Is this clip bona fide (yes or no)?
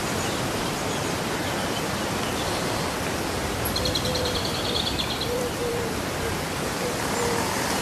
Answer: no